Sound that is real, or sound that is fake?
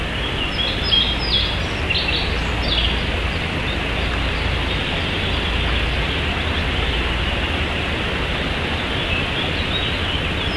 real